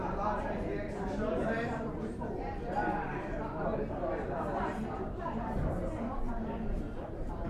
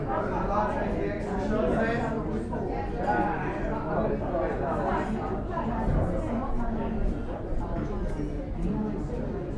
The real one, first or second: second